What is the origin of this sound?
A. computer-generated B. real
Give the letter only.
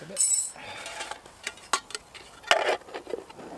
B